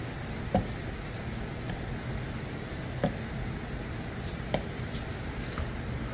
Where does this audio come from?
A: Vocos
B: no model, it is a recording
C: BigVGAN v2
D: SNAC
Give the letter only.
B